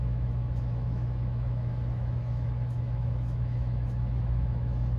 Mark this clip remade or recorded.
remade